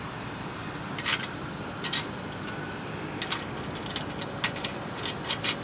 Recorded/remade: recorded